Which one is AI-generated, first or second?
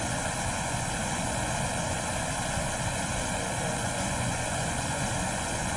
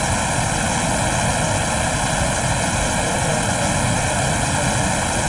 first